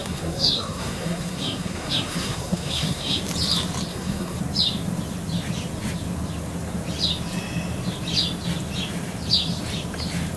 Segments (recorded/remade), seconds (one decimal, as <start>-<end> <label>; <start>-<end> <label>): 0.0-3.2 remade; 3.2-3.9 recorded; 3.9-4.4 remade; 4.4-10.4 recorded